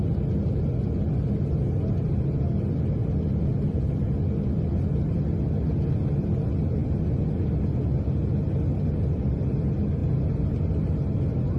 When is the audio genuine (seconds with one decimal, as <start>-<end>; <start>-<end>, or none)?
0.0-11.6